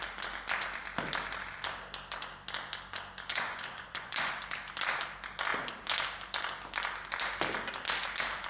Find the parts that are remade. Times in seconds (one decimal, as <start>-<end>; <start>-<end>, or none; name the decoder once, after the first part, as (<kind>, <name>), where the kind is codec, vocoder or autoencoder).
3.3-4.3 (vocoder, Vocos)